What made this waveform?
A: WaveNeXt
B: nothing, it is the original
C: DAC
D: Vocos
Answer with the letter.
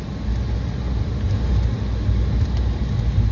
B